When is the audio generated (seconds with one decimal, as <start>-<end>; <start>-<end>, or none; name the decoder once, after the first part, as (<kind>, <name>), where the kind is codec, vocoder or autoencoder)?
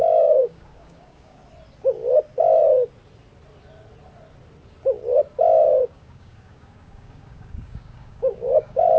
0.0-1.4 (codec, DAC); 5.8-9.0